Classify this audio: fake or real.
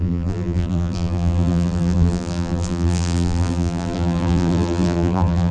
fake